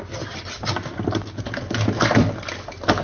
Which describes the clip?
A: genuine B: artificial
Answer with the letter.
A